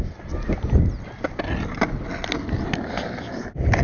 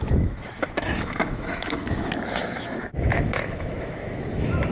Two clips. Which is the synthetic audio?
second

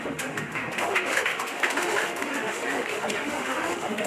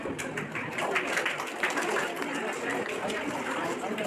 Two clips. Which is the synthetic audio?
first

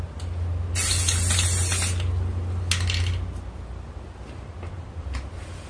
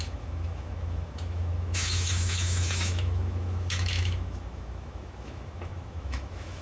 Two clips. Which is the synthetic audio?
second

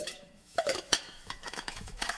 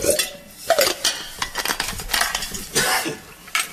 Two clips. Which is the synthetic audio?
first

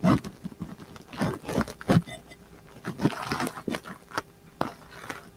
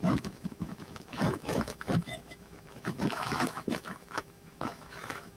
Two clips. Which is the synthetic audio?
second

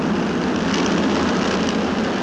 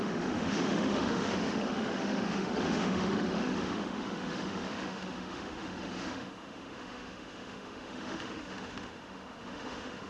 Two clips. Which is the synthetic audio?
second